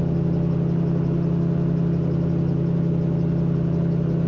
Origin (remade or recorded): recorded